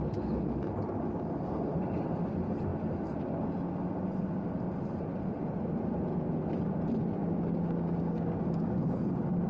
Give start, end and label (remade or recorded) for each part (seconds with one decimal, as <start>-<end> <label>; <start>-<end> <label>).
0.0-7.2 recorded; 7.2-8.8 remade; 8.8-9.5 recorded